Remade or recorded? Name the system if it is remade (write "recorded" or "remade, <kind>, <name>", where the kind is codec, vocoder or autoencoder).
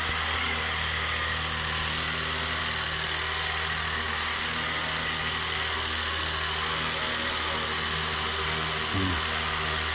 recorded